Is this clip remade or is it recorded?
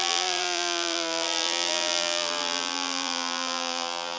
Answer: remade